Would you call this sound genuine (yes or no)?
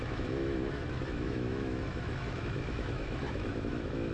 no